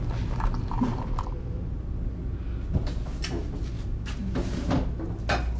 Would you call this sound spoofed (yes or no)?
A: no